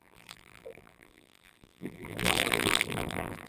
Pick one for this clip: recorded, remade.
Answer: remade